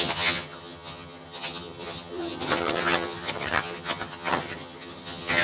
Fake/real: fake